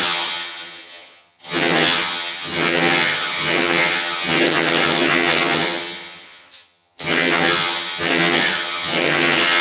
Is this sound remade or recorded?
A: remade